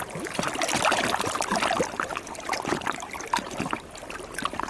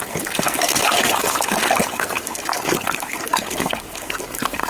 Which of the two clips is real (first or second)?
first